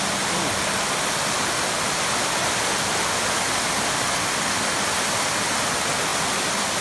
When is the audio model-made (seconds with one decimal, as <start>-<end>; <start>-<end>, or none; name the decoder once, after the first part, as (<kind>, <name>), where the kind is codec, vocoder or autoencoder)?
none